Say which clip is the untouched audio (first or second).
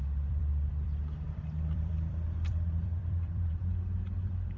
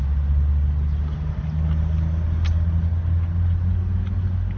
second